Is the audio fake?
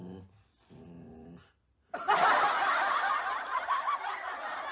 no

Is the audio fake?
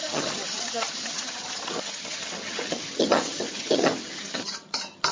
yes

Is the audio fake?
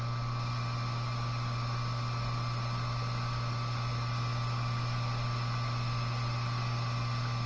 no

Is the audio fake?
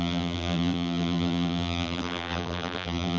yes